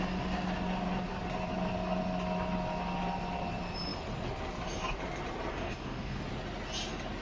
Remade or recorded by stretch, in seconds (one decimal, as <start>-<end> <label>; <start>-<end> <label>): 0.0-5.5 recorded; 5.5-6.2 remade; 6.2-7.2 recorded